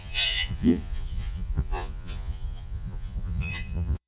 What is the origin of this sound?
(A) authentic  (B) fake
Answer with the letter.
B